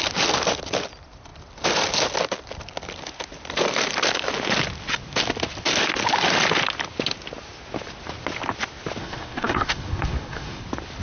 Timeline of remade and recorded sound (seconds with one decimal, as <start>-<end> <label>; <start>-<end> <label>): 0.0-9.0 recorded; 9.0-10.6 remade; 10.6-11.0 recorded